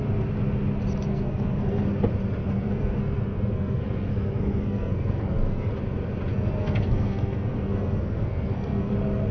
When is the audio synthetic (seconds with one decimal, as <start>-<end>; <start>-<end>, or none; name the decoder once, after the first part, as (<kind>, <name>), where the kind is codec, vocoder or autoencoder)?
1.1-2.0 (codec, SNAC); 2.4-5.7; 6.3-8.9